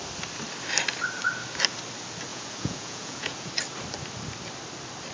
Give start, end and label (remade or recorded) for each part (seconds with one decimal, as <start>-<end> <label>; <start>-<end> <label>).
0.0-2.3 recorded; 2.3-3.5 remade; 3.5-5.1 recorded